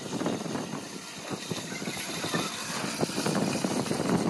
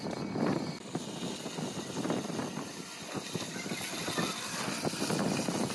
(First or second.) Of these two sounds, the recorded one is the second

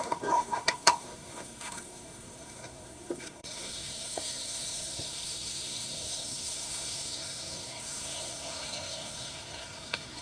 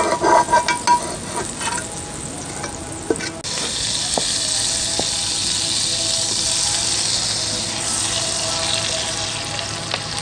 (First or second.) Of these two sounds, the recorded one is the second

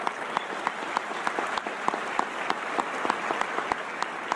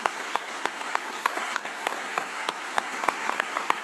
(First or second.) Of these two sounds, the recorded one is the first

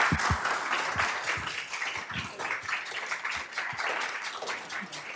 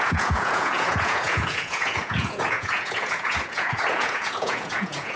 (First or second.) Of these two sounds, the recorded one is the first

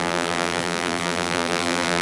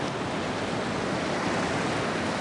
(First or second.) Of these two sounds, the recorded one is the second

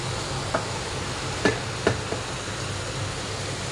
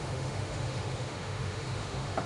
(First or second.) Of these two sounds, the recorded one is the first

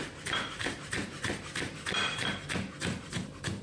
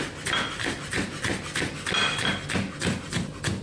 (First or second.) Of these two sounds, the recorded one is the second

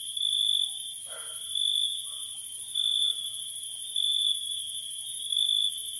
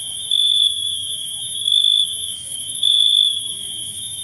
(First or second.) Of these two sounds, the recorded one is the first